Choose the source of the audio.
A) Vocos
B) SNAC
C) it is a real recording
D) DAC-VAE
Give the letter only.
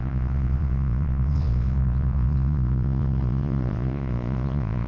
A